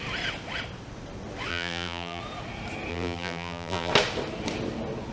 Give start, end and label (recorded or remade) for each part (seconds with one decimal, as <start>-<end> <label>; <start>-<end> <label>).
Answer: 0.0-1.5 recorded; 1.5-2.2 remade; 2.2-2.9 recorded; 2.9-3.9 remade; 3.9-5.1 recorded